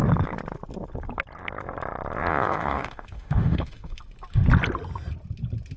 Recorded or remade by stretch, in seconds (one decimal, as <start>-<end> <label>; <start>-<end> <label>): 0.0-2.3 recorded; 2.3-4.0 remade; 4.0-5.8 recorded